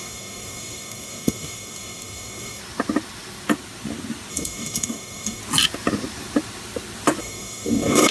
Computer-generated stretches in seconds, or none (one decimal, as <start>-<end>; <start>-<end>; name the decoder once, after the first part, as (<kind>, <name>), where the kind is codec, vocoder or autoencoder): 0.0-2.6 (codec, DAC); 4.3-5.4; 7.2-8.1